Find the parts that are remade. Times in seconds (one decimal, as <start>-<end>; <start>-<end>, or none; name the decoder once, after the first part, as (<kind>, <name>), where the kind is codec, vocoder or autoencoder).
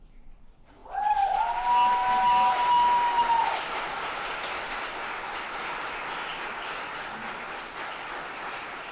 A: 6.3-8.9 (vocoder, BigVGAN v2)